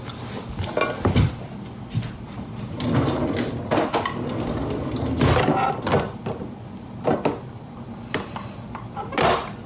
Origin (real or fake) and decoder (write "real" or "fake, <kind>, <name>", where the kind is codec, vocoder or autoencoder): real